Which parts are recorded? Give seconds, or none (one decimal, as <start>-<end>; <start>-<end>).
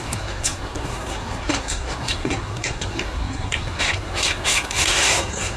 none